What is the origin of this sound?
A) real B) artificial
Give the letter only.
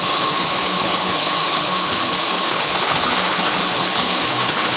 B